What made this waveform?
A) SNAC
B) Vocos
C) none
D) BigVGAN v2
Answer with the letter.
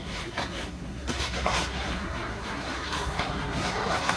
A